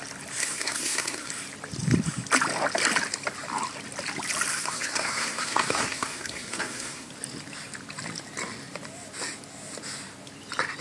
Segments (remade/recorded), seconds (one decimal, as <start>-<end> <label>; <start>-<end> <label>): 0.0-0.4 recorded; 0.4-1.3 remade; 1.3-4.5 recorded; 4.5-7.1 remade; 7.1-10.8 recorded